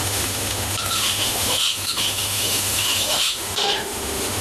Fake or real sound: fake